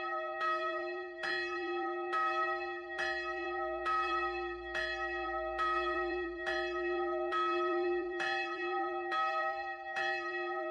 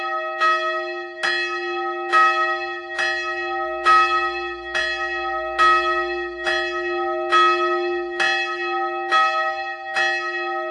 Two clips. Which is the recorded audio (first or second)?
second